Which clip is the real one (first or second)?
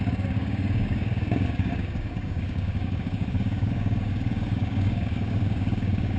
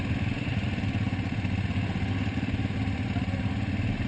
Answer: second